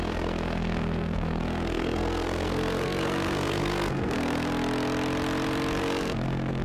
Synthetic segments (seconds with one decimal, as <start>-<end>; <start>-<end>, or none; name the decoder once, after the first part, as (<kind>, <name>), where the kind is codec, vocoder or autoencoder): 0.0-4.5 (codec, SNAC); 5.8-6.6